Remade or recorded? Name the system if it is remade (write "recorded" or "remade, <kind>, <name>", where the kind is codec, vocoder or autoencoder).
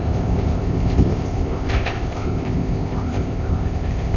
remade, codec, ZipCodec